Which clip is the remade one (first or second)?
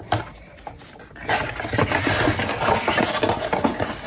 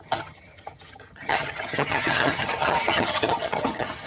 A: second